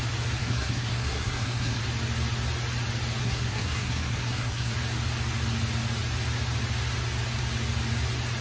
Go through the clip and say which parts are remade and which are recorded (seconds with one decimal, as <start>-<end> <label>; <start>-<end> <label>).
0.0-0.4 recorded; 0.4-1.8 remade; 1.8-3.2 recorded; 3.2-4.7 remade; 4.7-8.4 recorded